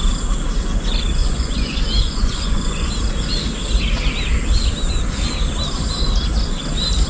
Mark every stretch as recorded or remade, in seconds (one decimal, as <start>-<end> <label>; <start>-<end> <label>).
0.0-1.2 recorded; 1.2-2.9 remade; 2.9-7.1 recorded